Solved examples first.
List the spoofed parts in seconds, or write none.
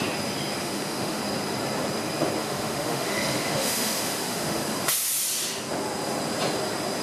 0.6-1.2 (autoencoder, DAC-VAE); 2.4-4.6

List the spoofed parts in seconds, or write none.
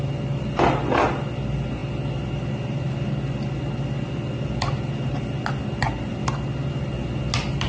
none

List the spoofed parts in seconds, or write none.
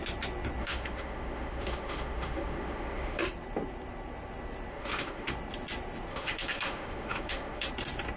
0.6-3.2 (autoencoder, DAC-VAE); 4.7-5.3; 6.1-7.7